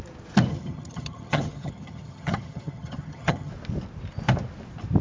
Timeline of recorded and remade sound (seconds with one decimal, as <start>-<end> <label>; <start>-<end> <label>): 0.0-0.5 recorded; 0.5-3.5 remade; 3.5-5.0 recorded